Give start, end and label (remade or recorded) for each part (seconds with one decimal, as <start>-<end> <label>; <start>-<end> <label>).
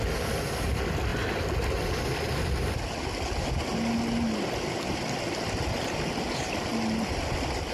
0.0-7.7 recorded